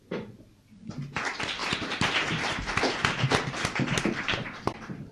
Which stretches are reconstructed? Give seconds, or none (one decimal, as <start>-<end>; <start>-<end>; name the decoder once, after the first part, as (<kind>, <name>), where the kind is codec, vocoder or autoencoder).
1.6-5.1 (vocoder, BigVGAN v2)